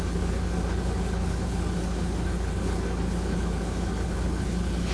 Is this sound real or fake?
fake